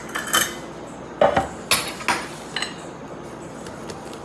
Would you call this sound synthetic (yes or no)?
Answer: no